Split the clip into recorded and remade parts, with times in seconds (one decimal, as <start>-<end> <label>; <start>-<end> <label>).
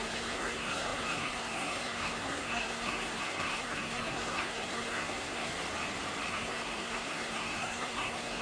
0.0-5.5 remade; 5.5-6.3 recorded; 6.3-8.4 remade